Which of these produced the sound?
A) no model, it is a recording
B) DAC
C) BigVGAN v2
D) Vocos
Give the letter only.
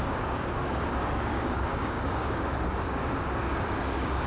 B